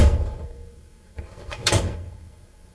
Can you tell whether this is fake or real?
fake